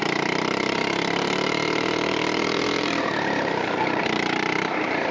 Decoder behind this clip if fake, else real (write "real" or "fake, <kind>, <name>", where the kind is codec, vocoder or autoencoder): fake, vocoder, BigVGAN v2